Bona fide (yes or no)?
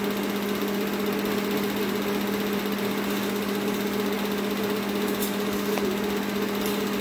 yes